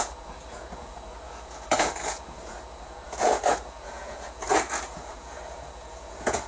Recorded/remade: remade